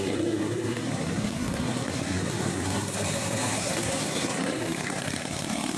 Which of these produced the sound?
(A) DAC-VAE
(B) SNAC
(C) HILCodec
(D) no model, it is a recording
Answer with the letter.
B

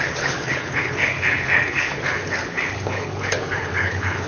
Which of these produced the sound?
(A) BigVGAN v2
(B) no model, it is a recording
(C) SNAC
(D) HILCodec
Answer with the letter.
D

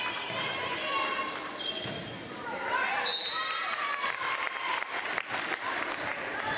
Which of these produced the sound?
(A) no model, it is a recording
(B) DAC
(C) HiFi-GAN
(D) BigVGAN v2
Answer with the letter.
A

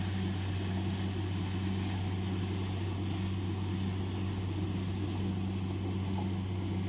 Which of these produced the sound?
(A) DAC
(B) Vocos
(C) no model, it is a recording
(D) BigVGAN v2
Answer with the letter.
C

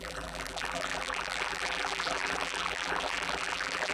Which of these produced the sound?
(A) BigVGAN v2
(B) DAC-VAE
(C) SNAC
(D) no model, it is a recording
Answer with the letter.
A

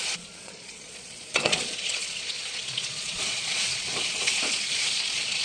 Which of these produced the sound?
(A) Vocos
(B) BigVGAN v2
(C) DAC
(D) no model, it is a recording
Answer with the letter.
A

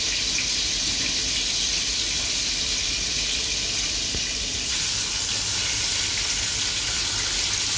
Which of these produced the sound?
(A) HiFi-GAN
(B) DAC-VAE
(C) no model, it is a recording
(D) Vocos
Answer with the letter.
C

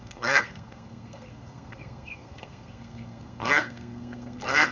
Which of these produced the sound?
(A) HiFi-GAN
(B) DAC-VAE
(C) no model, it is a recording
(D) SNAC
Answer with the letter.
D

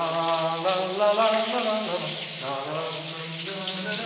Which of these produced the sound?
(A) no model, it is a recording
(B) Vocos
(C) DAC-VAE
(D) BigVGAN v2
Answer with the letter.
C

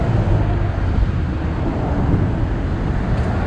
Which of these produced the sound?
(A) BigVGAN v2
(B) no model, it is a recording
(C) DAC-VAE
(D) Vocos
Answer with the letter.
B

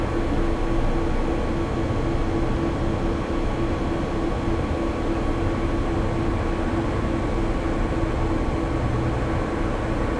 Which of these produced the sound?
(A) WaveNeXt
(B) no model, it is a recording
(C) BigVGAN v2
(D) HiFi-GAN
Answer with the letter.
B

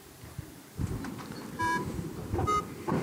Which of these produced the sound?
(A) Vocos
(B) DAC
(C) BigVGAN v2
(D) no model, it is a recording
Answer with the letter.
C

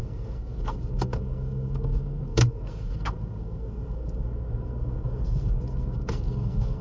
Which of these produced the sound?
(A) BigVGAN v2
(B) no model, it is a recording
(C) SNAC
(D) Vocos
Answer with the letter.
C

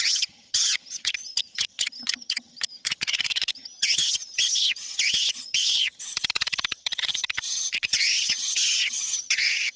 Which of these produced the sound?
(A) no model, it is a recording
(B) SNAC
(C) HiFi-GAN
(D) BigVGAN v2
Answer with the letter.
C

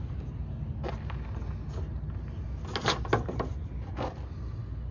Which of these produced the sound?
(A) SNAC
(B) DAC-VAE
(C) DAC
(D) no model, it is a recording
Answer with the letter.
D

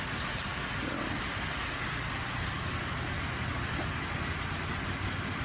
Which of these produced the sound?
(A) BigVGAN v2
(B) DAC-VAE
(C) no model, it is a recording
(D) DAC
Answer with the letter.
C